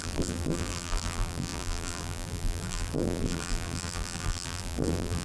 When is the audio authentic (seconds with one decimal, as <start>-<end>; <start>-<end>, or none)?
none